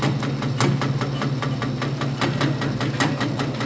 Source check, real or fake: real